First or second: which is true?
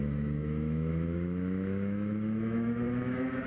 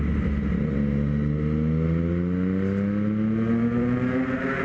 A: second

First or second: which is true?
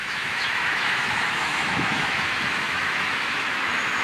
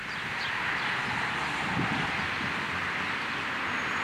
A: second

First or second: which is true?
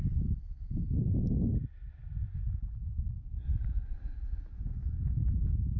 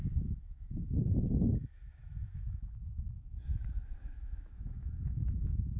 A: first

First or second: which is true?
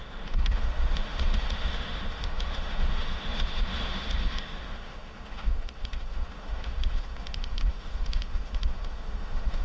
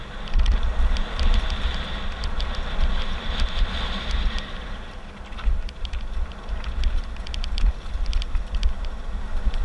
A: second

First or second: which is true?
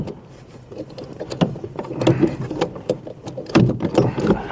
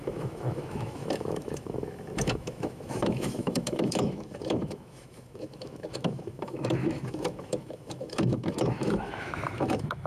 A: first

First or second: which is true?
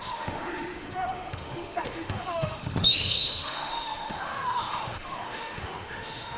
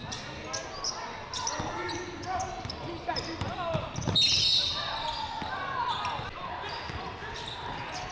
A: second